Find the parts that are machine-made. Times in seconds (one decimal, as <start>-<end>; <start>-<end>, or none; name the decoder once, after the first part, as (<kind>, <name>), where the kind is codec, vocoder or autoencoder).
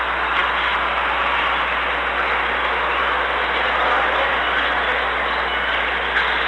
none